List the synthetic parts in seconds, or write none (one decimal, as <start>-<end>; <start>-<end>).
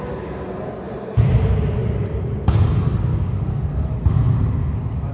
3.1-3.6